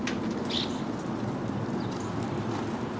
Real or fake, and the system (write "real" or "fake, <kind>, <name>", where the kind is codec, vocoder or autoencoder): real